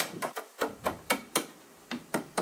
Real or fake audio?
fake